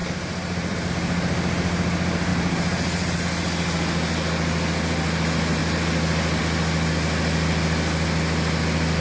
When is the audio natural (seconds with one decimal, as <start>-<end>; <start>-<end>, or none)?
0.9-2.3; 3.2-9.0